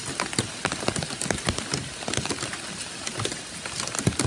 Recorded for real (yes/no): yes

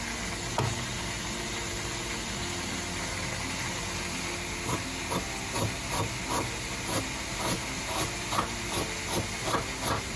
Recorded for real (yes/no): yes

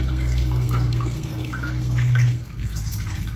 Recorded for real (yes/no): no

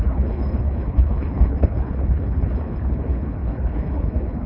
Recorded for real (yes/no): no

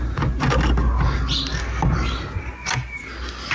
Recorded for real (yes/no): yes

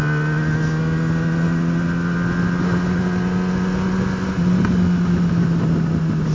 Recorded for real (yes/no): yes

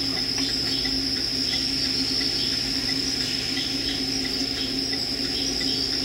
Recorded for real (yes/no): yes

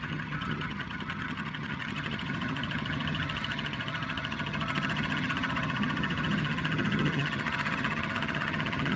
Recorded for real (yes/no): no